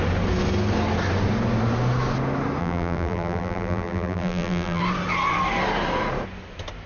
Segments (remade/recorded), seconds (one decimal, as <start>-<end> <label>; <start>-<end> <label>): 0.0-2.6 recorded; 2.6-4.8 remade; 4.8-6.9 recorded